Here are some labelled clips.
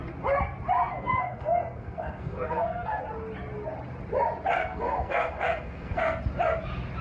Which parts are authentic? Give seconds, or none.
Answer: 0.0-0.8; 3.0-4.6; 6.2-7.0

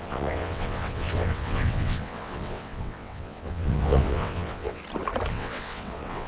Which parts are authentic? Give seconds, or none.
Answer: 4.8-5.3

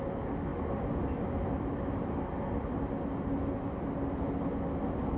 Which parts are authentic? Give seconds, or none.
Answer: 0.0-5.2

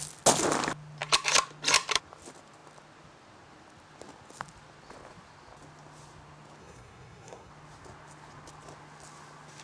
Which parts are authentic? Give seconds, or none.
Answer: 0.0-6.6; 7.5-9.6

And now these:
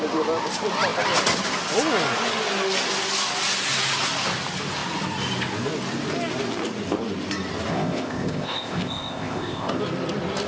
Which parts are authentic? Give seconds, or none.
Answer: 0.0-7.7; 9.8-10.5

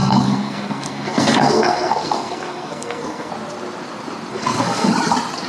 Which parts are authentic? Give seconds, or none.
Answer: 3.3-4.3; 4.9-5.5